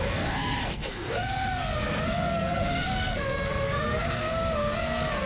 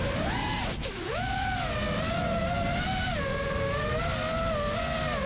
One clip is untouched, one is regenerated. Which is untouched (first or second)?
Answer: second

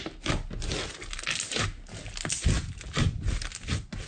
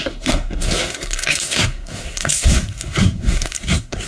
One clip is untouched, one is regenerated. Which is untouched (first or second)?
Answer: first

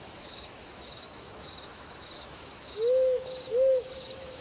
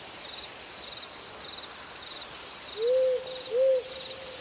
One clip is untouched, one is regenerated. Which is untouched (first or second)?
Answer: second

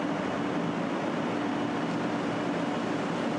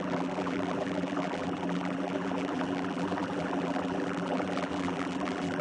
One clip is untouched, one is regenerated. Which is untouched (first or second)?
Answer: first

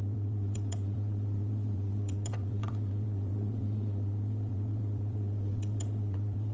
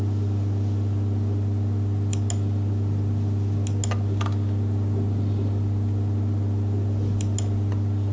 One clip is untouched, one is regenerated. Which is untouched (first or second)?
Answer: second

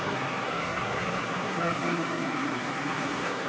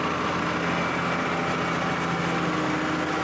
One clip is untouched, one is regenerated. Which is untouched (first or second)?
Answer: second